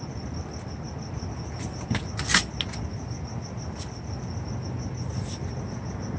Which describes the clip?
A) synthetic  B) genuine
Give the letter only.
B